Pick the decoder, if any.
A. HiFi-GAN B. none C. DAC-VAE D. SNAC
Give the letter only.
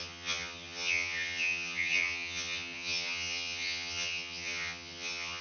A